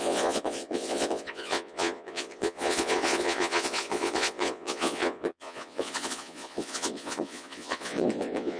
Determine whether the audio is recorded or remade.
remade